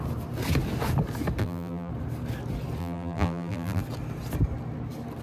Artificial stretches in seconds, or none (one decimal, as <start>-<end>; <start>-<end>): 1.4-1.9; 2.8-3.8